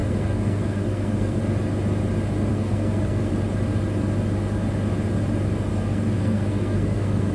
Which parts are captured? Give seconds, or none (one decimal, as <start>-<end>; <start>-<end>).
1.4-2.5; 3.3-5.7